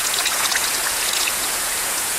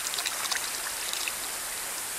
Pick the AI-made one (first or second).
first